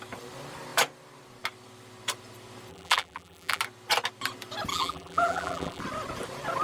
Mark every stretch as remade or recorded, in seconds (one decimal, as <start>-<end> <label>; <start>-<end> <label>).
0.0-2.7 recorded; 2.7-3.6 remade; 3.6-4.7 recorded; 4.7-5.8 remade; 5.8-6.6 recorded